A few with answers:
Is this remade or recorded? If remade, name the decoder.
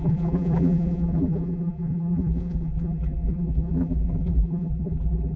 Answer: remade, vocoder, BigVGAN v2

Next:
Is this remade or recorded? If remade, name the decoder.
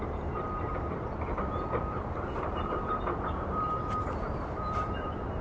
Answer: remade, vocoder, BigVGAN v2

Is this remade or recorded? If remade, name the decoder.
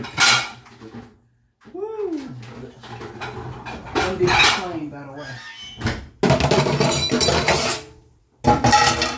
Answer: recorded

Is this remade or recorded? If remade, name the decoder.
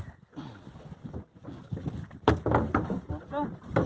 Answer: recorded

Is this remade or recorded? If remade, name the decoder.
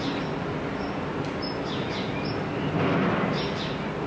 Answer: recorded